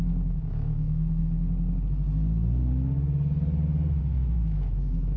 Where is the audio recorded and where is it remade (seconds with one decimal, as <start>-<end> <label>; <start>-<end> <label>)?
0.0-1.2 remade; 1.2-4.0 recorded; 4.0-5.2 remade